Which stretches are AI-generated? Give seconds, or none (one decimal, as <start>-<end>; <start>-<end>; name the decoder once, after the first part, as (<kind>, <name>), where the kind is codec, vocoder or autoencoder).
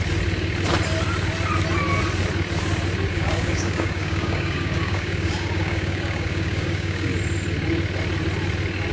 3.1-7.1 (codec, DAC)